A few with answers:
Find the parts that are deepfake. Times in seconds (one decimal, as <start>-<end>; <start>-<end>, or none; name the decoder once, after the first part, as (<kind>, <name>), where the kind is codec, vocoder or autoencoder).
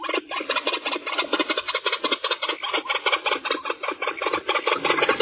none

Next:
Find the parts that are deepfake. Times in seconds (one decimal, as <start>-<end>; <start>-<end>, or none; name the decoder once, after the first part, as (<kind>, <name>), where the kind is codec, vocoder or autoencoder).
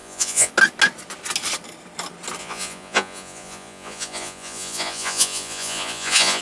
0.0-0.5 (vocoder, Vocos); 2.4-6.4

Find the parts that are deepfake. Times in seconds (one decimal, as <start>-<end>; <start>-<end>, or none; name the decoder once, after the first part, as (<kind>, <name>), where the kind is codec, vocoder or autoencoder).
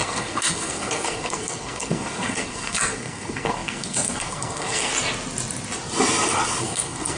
0.0-4.9 (codec, SNAC); 6.6-7.2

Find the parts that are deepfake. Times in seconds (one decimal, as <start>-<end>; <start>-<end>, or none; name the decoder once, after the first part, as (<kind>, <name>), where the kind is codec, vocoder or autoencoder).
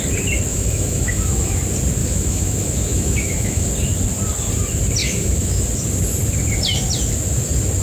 0.5-1.6 (autoencoder, DAC-VAE); 2.0-3.7; 5.0-5.6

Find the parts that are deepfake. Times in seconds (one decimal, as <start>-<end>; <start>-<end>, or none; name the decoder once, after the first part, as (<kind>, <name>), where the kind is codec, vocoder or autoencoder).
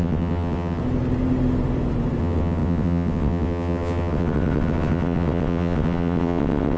0.0-0.8 (vocoder, WaveNeXt); 2.2-6.8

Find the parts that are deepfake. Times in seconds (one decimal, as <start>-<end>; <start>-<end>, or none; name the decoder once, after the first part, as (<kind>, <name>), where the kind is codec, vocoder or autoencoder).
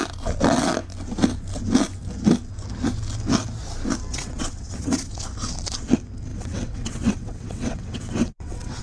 4.1-5.1 (vocoder, WaveNeXt); 6.3-8.8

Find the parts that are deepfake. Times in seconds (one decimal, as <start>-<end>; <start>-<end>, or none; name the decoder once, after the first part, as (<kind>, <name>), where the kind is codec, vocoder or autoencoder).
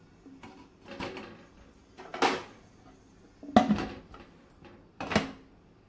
none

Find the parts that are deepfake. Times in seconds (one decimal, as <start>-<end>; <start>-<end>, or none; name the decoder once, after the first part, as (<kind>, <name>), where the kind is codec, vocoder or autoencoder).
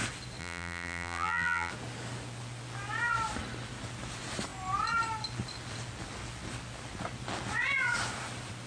0.4-1.7 (vocoder, BigVGAN v2)